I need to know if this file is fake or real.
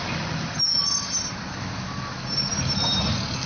real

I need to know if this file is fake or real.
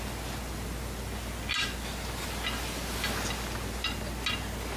real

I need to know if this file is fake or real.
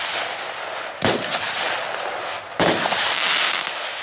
real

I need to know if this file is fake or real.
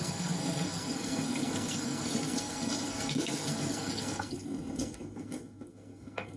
fake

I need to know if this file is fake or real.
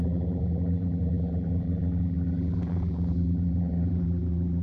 fake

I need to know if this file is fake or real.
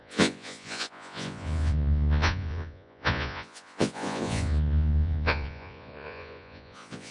fake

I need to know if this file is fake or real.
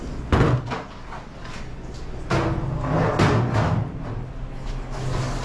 real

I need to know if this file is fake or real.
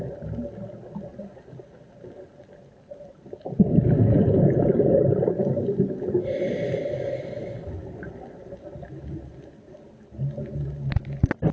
real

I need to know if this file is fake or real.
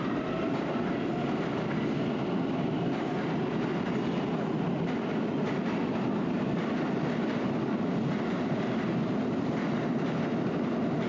real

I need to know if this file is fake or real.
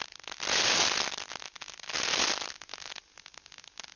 real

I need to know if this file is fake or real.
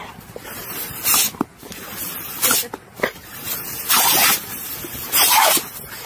real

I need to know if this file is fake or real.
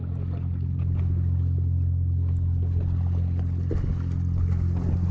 real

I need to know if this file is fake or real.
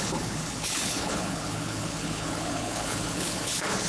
fake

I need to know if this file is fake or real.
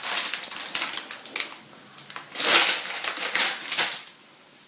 real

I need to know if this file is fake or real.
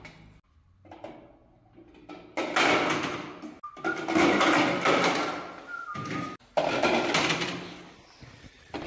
real